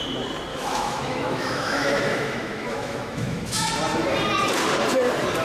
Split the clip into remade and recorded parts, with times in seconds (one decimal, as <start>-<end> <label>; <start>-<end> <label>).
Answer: 0.0-0.5 recorded; 0.5-3.7 remade; 3.7-5.4 recorded